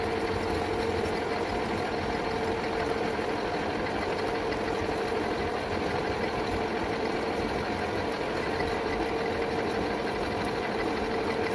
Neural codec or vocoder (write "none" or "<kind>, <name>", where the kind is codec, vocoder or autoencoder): none